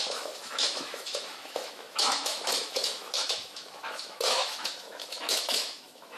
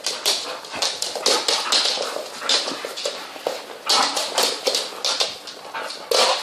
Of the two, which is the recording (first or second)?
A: second